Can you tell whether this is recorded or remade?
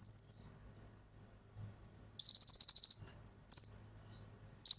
recorded